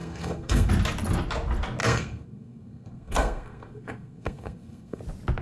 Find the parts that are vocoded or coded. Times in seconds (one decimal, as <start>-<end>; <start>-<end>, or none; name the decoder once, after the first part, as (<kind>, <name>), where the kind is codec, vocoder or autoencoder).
0.0-0.7 (codec, SNAC); 1.8-5.0